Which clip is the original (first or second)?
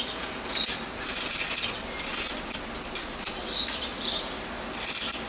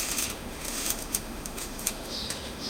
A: first